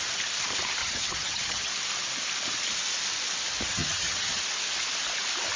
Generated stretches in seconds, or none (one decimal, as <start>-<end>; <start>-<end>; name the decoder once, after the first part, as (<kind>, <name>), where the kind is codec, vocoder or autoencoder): 0.8-1.7 (vocoder, HiFi-GAN); 3.7-4.4

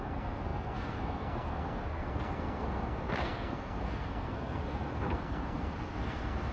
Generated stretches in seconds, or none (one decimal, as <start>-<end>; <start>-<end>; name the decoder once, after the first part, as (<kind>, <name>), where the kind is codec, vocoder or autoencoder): 0.0-6.5 (codec, SNAC)

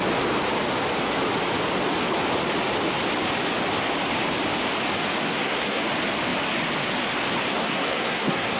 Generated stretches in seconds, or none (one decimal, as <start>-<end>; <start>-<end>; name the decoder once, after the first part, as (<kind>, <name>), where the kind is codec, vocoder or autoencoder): 5.3-5.8 (codec, SNAC); 7.5-8.6

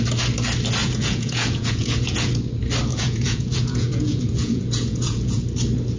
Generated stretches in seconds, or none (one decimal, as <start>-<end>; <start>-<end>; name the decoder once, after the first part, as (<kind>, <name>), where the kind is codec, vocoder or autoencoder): 0.8-2.3 (vocoder, Vocos); 2.9-5.4

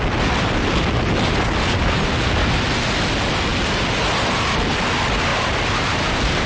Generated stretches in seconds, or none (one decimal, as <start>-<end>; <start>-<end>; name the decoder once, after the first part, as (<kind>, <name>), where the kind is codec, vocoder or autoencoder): 5.3-6.5 (vocoder, BigVGAN v2)